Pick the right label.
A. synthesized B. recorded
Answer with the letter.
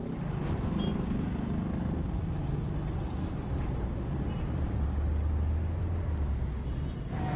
B